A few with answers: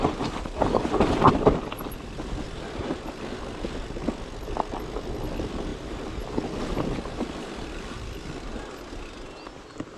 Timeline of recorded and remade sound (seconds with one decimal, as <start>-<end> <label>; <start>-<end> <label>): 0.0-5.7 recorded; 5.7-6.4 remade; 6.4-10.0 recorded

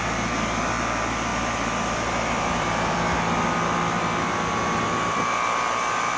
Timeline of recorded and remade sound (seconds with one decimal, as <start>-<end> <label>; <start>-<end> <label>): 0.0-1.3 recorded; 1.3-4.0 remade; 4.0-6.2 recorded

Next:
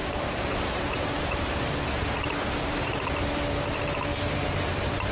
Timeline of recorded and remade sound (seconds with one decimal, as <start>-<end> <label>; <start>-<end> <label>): 0.0-3.1 remade; 3.1-4.1 recorded; 4.1-5.1 remade